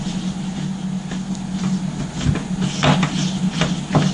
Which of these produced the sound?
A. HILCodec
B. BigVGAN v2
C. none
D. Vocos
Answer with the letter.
C